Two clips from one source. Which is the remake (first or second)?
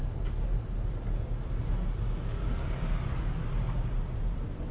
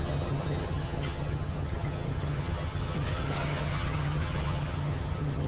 second